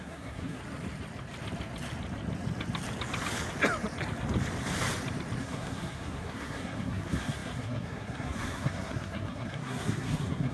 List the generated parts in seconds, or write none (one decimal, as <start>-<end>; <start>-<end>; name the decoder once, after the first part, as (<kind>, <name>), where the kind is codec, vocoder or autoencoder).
0.0-0.6 (codec, SNAC); 5.4-10.5